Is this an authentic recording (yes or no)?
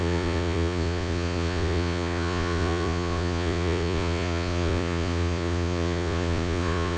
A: no